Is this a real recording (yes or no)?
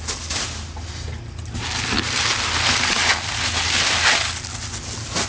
yes